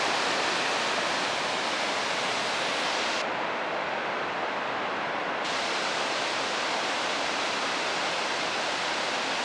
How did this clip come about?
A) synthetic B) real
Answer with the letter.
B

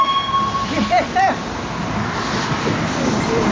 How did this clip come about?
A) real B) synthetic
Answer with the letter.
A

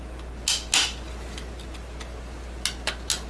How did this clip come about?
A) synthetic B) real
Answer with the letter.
B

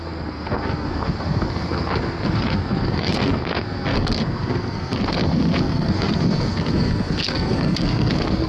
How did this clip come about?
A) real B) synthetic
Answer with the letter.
B